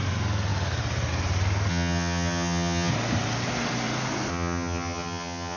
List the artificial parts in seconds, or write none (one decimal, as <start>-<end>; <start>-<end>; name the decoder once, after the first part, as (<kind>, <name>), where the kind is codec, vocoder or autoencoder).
1.7-2.9 (vocoder, HiFi-GAN); 4.3-5.6